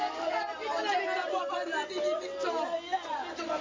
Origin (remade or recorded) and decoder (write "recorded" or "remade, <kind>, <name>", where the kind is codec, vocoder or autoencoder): recorded